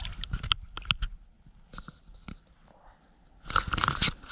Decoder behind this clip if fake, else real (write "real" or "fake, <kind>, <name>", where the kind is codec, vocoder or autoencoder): real